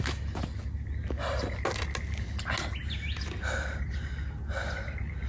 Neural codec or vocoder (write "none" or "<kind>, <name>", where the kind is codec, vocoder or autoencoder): none